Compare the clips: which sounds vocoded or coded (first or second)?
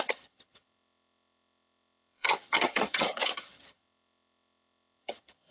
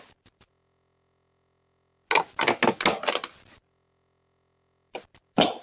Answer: first